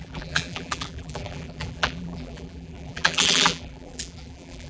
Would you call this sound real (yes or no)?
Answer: no